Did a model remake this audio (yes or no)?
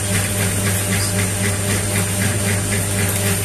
no